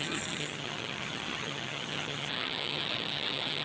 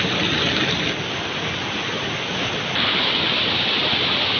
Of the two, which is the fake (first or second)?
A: first